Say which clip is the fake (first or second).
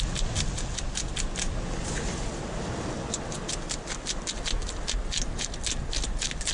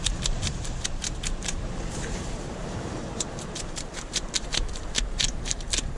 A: second